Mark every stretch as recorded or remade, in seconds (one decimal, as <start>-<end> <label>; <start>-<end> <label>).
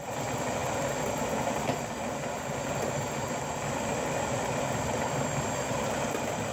0.0-6.5 recorded